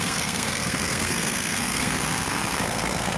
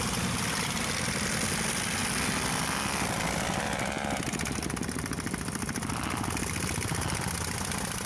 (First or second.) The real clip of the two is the second